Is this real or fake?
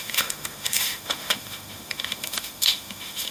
fake